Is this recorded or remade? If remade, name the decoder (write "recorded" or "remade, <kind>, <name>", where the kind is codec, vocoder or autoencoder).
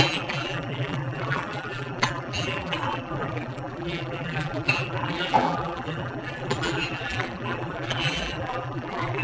remade, vocoder, BigVGAN v2